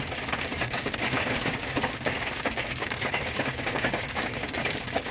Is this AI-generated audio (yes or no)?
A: yes